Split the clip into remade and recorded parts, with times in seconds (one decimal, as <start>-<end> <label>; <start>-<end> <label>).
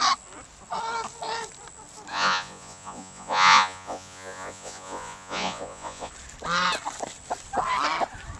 0.0-2.1 recorded; 2.1-6.1 remade; 6.1-8.4 recorded